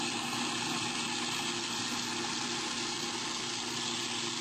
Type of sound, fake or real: real